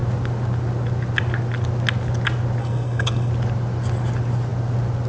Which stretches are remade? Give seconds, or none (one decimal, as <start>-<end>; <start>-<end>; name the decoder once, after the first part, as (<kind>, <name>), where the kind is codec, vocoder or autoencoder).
2.6-3.3 (codec, SNAC)